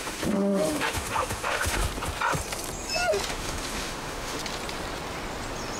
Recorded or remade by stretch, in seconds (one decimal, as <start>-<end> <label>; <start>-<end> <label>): 0.0-1.8 remade; 1.8-3.3 recorded; 3.3-4.4 remade; 4.4-5.8 recorded